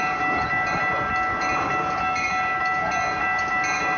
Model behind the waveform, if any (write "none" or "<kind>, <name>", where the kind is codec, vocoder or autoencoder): none